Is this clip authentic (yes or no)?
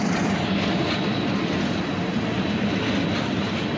yes